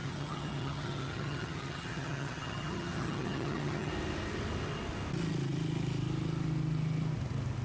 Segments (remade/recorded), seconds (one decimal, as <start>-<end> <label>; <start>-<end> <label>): 0.0-3.9 remade; 3.9-7.6 recorded

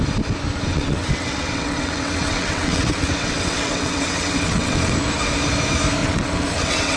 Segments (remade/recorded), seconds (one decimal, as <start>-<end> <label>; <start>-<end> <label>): 0.0-0.7 recorded; 0.7-4.9 remade; 4.9-6.0 recorded; 6.0-7.0 remade

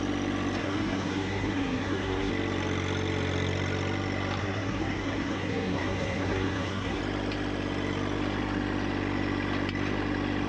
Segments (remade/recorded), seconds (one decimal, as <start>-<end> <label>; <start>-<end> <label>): 0.0-0.6 recorded; 0.6-2.3 remade; 2.3-4.4 recorded; 4.4-7.0 remade; 7.0-10.5 recorded

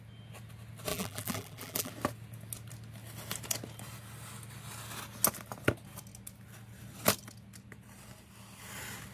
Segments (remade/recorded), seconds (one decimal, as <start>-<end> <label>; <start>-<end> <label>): 0.0-0.9 recorded; 0.9-1.9 remade; 1.9-9.1 recorded

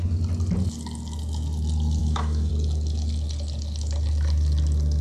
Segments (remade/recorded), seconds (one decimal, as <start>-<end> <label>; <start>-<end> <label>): 0.0-2.0 recorded; 2.0-2.5 remade; 2.5-5.0 recorded

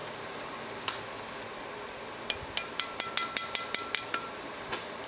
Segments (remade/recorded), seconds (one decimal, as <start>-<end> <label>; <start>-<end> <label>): 0.0-5.1 recorded

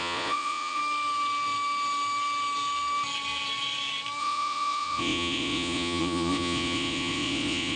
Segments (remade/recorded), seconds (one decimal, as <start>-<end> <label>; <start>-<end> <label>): 0.0-0.8 remade; 0.8-4.2 recorded; 4.2-7.8 remade